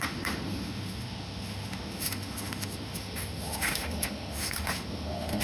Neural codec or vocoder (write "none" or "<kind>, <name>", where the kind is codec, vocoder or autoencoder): autoencoder, DAC-VAE